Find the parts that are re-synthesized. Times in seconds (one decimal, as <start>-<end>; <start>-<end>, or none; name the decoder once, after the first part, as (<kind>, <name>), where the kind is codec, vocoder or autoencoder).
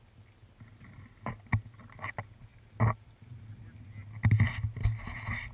none